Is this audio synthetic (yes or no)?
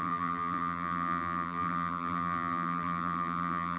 yes